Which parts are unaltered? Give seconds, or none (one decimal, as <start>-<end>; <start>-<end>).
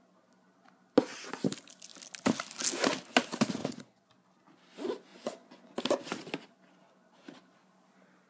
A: 0.0-3.6; 4.1-5.1; 5.8-8.3